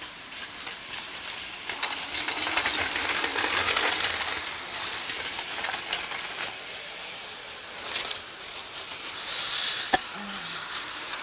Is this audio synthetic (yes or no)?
no